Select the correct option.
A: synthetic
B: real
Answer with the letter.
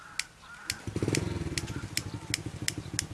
B